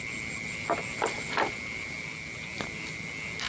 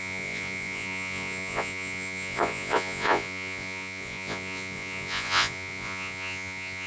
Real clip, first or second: first